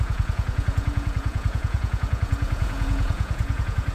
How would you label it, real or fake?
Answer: fake